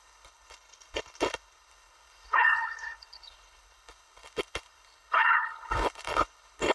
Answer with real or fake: fake